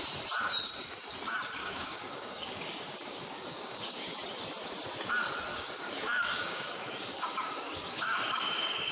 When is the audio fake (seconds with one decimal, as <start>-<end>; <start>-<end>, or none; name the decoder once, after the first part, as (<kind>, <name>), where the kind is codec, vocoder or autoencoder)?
1.6-4.0 (codec, DAC); 5.5-8.9